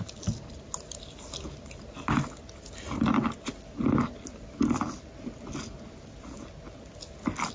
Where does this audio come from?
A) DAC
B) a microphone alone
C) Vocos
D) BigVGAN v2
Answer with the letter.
B